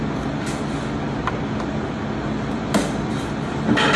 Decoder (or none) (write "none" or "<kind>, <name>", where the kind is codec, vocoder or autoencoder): none